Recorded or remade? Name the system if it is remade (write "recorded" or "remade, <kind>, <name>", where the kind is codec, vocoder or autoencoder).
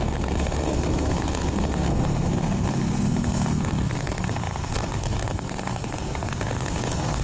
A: remade, codec, SNAC